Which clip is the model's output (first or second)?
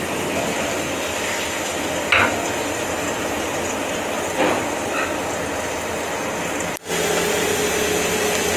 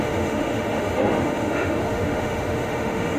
second